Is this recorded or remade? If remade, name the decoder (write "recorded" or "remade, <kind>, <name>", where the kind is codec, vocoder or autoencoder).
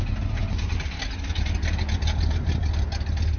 recorded